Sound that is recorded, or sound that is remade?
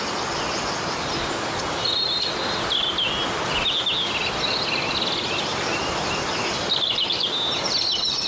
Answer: recorded